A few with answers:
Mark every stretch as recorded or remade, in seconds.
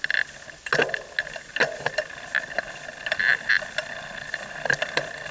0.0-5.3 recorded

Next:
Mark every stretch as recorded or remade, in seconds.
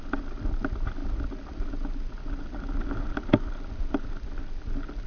0.0-5.1 recorded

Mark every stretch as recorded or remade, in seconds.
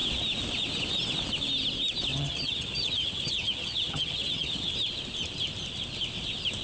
0.0-2.1 recorded; 2.1-4.7 remade; 4.7-6.6 recorded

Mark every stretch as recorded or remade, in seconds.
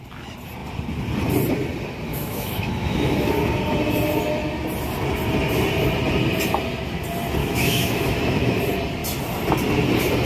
0.0-2.1 recorded; 2.1-3.3 remade; 3.3-7.4 recorded; 7.4-8.6 remade; 8.6-10.3 recorded